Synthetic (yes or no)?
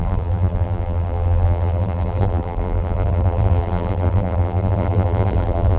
yes